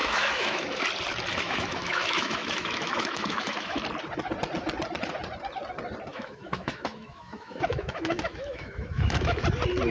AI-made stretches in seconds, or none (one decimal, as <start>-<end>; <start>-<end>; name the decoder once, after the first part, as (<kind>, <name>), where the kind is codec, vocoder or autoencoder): 0.0-0.8 (autoencoder, DAC-VAE); 1.3-3.8; 6.1-9.4